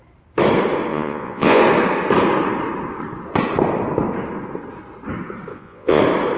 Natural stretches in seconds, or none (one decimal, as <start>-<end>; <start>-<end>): 0.0-0.9; 1.6-5.5; 6.0-6.4